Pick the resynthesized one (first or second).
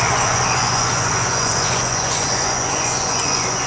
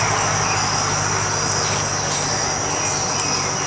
first